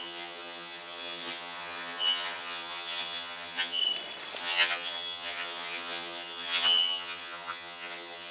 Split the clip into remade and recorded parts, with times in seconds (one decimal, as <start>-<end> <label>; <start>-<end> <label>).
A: 0.0-3.8 remade; 3.8-4.4 recorded; 4.4-8.3 remade